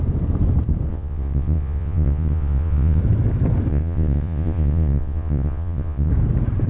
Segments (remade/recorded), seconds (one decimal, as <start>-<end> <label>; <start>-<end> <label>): 0.0-0.9 recorded; 0.9-3.0 remade; 3.0-3.7 recorded; 3.7-6.1 remade; 6.1-6.7 recorded